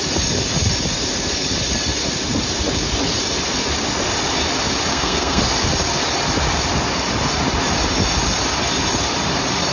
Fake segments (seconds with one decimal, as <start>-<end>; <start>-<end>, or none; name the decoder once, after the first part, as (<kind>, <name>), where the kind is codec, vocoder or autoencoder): 4.9-5.4 (codec, SNAC)